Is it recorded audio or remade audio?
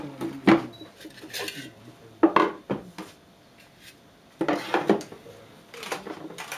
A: recorded